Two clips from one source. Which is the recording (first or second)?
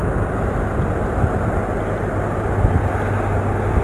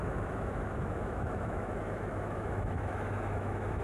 first